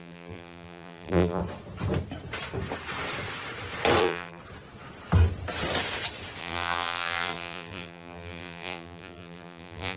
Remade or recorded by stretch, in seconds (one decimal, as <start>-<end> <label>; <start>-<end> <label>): 0.0-1.4 remade; 1.4-4.0 recorded; 4.0-4.4 remade; 4.4-6.4 recorded; 6.4-10.0 remade